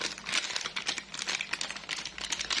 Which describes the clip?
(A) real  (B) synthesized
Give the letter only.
A